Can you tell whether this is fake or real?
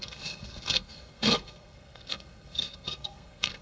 fake